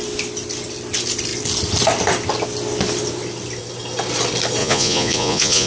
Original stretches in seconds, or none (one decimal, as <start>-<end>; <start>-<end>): 0.0-4.6